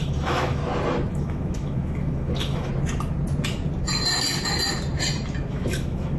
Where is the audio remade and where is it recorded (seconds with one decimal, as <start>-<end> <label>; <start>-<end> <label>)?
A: 0.0-0.6 remade; 0.6-1.1 recorded; 1.1-2.7 remade; 2.7-5.5 recorded; 5.5-6.2 remade